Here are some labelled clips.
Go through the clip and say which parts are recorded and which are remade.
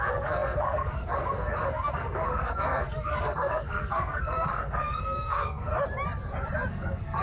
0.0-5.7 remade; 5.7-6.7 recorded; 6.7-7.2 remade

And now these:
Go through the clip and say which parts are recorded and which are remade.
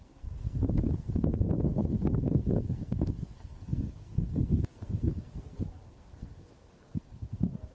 0.0-7.7 remade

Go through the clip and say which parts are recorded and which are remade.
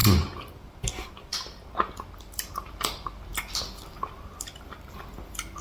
0.0-5.6 recorded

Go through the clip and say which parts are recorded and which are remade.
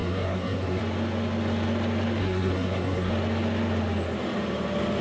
0.0-0.8 remade; 0.8-2.2 recorded; 2.2-3.1 remade; 3.1-5.0 recorded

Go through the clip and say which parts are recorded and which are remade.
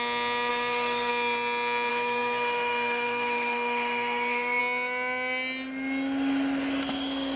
0.0-0.5 recorded; 0.5-1.1 remade; 1.1-1.9 recorded; 1.9-4.6 remade; 4.6-7.4 recorded